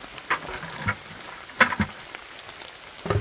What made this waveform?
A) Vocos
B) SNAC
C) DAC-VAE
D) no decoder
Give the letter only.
D